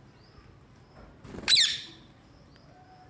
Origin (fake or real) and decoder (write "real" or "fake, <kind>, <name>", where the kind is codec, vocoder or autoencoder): real